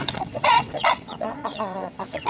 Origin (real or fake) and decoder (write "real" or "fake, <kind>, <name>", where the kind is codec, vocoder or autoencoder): fake, vocoder, WaveNeXt